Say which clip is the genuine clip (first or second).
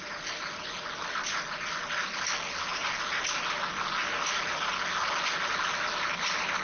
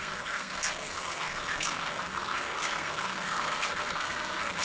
first